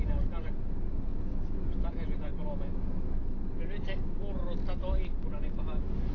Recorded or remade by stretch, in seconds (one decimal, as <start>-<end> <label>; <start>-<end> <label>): 0.0-6.1 recorded